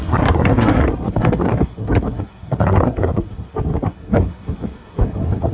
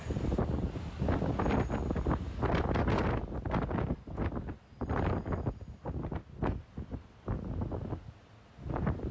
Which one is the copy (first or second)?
first